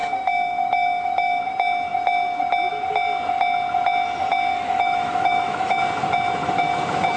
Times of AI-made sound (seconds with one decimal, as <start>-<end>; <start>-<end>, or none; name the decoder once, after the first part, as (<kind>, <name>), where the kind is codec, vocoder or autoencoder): 0.0-1.4 (autoencoder, DAC-VAE); 4.5-5.8